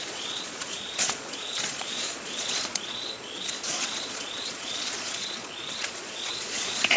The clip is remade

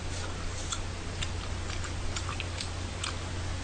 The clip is recorded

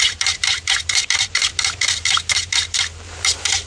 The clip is remade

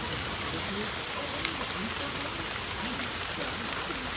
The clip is recorded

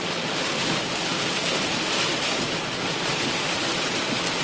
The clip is recorded